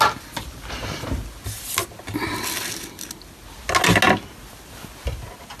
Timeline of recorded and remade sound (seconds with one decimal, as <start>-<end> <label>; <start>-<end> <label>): 0.0-5.6 recorded